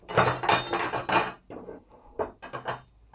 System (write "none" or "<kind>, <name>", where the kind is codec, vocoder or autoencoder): none